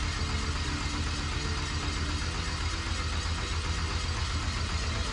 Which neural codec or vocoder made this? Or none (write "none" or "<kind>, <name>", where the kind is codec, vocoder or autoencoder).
none